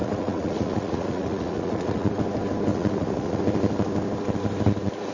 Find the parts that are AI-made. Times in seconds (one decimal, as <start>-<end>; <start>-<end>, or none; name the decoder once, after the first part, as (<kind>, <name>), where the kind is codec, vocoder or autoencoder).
0.0-2.1 (vocoder, Vocos); 2.7-3.4